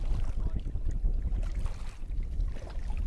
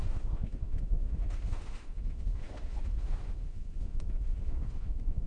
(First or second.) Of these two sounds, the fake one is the second